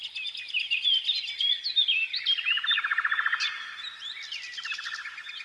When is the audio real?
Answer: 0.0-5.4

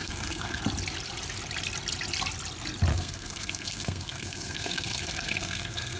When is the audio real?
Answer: 0.6-2.9

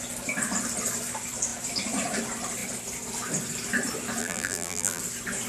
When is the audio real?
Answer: 0.0-4.2; 5.0-5.5

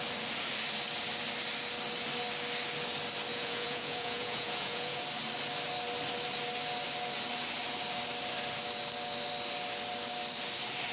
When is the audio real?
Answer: 0.0-3.3; 5.0-10.9

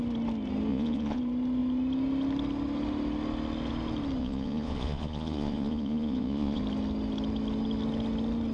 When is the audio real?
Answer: 0.0-0.7; 1.2-4.2; 6.6-8.5

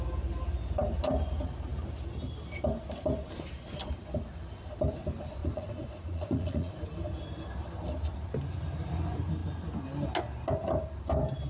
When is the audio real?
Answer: 0.0-5.4; 6.7-11.5

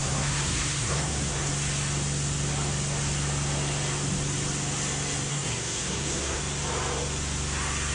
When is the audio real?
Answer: 1.5-5.3; 6.4-7.9